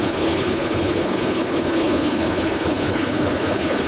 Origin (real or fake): fake